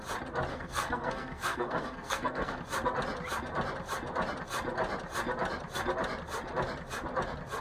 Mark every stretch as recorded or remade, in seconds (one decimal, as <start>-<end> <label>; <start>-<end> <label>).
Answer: 0.0-0.5 recorded; 0.5-2.6 remade; 2.6-7.6 recorded